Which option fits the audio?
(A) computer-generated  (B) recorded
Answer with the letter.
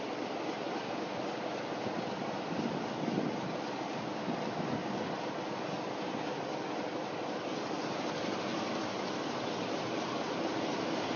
B